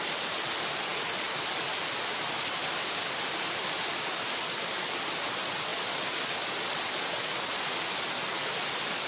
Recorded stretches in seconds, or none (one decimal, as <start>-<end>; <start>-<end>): 0.0-9.1

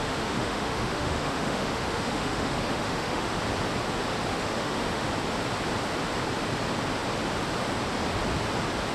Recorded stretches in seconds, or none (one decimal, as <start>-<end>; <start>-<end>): 3.3-4.3; 5.1-8.9